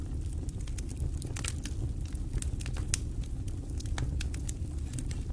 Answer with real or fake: real